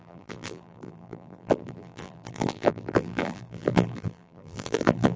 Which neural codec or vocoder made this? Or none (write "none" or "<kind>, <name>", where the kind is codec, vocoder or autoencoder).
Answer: vocoder, BigVGAN v2